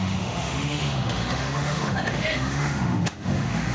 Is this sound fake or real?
fake